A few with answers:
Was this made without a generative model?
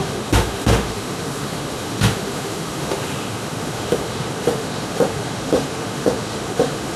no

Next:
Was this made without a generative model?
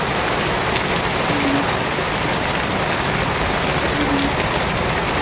yes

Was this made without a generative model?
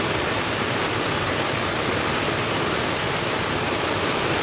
yes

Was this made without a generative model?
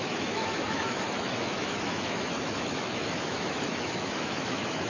no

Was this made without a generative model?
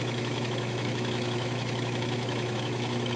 no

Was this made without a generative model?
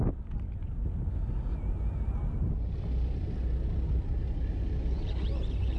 yes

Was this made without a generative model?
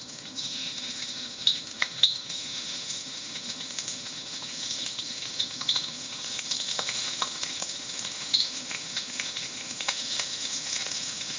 no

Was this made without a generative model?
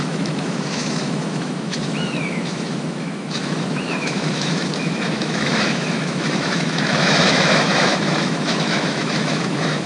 no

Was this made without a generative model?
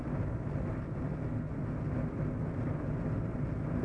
yes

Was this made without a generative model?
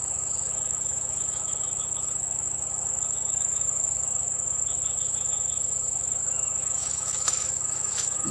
no